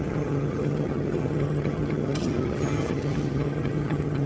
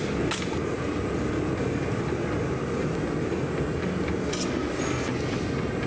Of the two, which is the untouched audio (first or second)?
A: second